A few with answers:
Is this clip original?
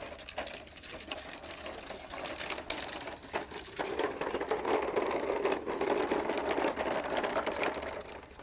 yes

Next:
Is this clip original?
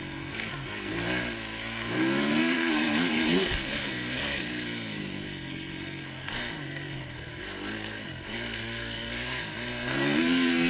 no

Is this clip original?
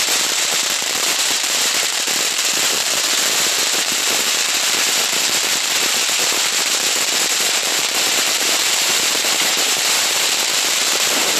no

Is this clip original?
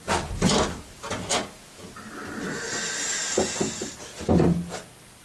yes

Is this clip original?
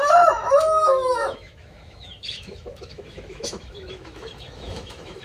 no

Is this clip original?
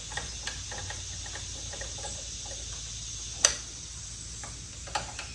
yes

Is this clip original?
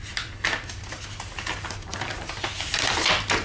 yes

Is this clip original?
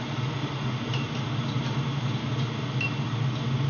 yes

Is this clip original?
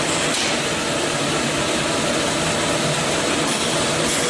yes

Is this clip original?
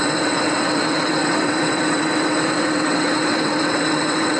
no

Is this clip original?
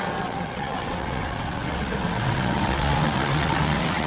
no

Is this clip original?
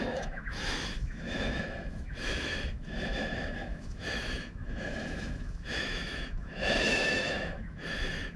no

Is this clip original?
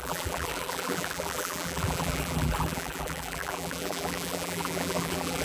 no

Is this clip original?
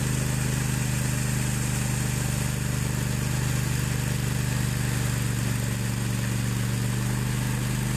yes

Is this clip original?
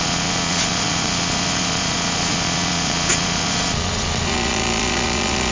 no